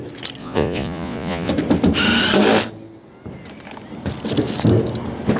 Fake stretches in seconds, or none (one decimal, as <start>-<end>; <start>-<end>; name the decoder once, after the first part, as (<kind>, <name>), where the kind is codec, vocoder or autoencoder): 0.4-1.5 (vocoder, Vocos)